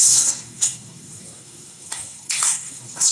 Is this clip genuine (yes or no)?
no